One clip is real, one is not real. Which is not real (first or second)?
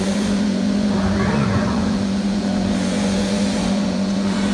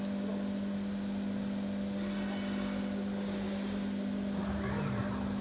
first